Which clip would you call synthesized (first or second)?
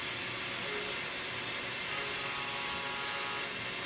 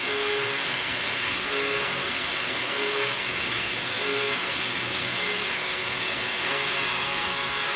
second